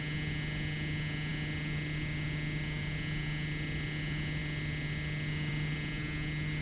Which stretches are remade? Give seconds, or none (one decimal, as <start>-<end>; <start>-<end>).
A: none